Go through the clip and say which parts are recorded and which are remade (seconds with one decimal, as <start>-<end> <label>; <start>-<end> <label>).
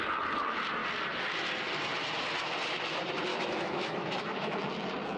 0.0-3.3 recorded; 3.3-4.7 remade; 4.7-5.2 recorded